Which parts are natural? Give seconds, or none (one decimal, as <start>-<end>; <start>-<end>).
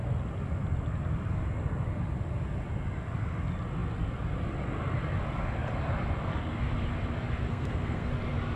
0.0-7.5; 8.1-8.6